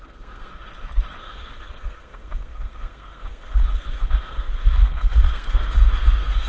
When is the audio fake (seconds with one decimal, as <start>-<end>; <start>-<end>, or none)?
0.0-0.5; 1.2-6.5